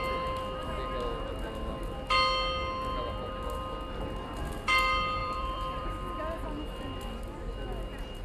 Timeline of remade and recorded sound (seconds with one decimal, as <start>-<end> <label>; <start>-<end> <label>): 0.0-5.2 recorded; 5.2-6.2 remade; 6.2-8.2 recorded